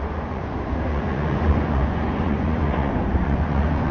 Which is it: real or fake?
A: fake